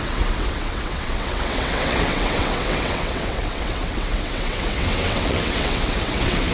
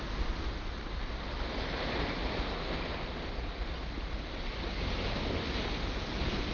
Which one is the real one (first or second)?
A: second